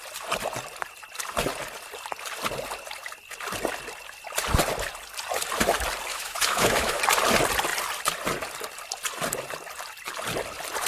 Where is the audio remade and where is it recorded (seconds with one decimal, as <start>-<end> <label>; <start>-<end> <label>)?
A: 0.0-6.1 recorded; 6.1-7.0 remade; 7.0-10.9 recorded